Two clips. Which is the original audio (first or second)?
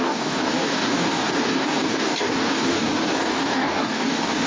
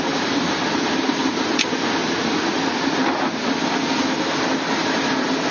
second